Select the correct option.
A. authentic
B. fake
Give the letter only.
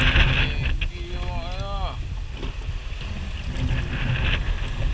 A